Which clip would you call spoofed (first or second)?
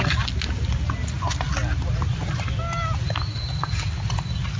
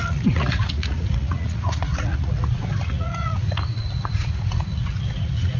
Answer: second